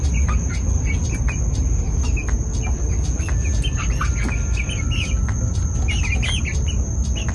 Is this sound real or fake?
real